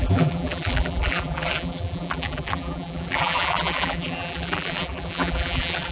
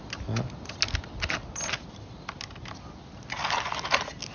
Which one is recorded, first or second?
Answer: second